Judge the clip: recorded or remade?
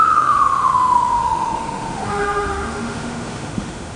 remade